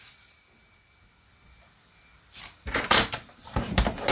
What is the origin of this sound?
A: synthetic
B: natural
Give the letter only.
B